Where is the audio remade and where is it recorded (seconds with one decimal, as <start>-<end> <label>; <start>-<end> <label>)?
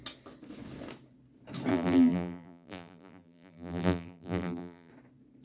0.0-1.7 recorded; 1.7-4.9 remade; 4.9-5.4 recorded